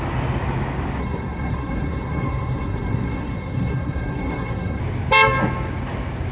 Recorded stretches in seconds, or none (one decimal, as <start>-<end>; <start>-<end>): 0.0-1.0; 4.8-6.3